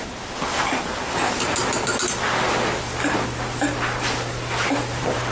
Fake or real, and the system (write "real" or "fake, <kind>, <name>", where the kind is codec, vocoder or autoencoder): real